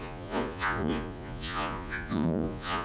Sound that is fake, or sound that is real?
fake